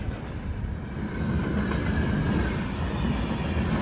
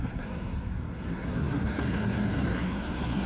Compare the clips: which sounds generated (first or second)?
second